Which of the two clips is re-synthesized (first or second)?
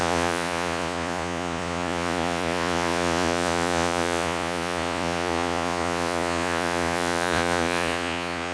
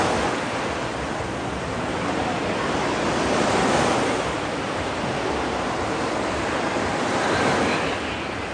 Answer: first